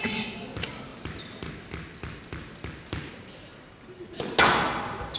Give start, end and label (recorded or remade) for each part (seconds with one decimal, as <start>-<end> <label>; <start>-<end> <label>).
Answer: 0.0-0.9 recorded; 0.9-1.5 remade; 1.5-5.2 recorded